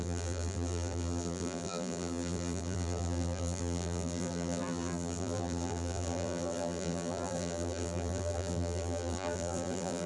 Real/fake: fake